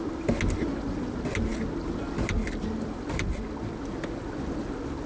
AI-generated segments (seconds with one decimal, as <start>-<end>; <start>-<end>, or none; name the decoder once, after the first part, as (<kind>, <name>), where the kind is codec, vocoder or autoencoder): none